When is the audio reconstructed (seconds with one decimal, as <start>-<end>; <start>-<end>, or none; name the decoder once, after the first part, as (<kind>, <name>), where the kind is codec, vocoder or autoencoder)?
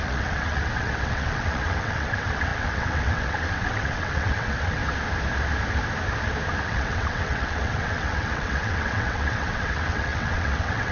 0.0-4.8 (vocoder, WaveNeXt); 6.6-10.9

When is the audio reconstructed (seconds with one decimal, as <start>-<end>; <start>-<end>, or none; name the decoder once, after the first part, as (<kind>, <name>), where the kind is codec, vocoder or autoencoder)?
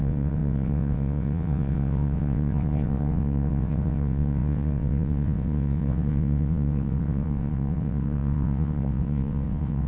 0.0-9.9 (vocoder, WaveNeXt)